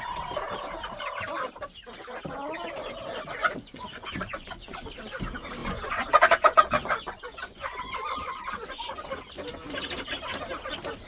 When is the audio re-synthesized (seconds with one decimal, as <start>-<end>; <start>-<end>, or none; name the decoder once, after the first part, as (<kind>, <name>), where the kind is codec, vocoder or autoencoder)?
3.4-5.0 (vocoder, Vocos); 5.6-9.2